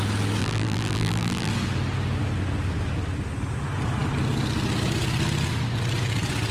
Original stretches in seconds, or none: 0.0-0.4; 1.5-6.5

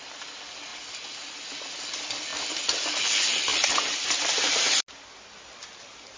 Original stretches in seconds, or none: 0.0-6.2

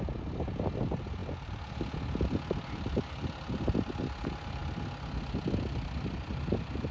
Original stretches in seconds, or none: 0.0-6.9

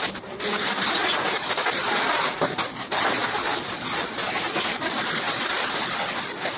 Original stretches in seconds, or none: 0.0-1.0; 1.5-6.6

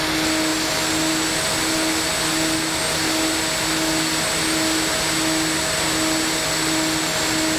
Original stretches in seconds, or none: 0.0-7.6

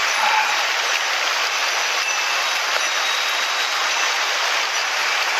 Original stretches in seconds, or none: 0.7-5.4

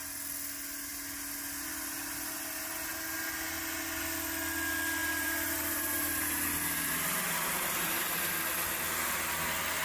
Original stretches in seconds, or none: 0.0-5.0; 8.4-9.8

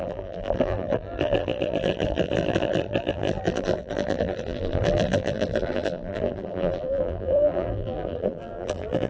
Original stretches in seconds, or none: none